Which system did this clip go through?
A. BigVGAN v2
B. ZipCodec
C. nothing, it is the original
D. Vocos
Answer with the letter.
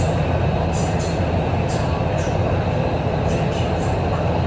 C